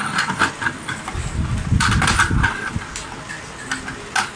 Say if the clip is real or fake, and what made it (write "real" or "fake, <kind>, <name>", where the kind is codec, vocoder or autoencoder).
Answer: real